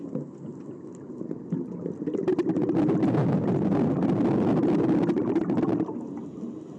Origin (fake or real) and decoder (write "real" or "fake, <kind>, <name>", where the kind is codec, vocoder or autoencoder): real